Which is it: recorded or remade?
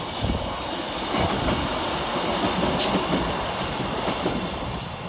recorded